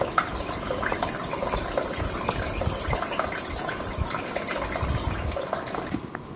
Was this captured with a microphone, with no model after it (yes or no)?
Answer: yes